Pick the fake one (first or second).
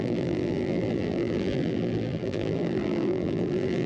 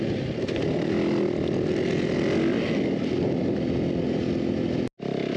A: first